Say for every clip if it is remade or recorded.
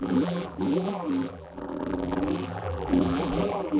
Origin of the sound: remade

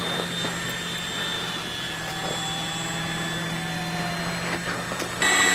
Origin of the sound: recorded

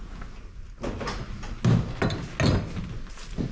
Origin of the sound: recorded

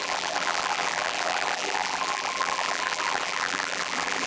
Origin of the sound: remade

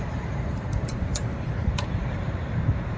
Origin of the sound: remade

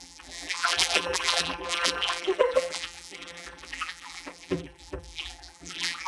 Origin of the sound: remade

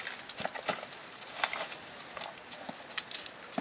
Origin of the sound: recorded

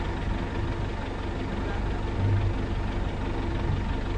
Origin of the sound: recorded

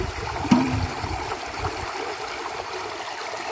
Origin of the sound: remade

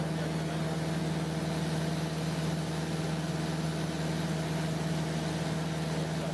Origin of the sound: recorded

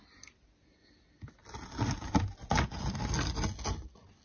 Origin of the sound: recorded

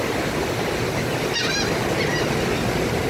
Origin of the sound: recorded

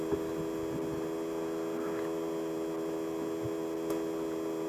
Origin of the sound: recorded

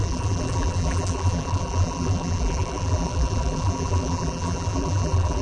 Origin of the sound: remade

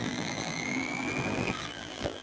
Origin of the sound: remade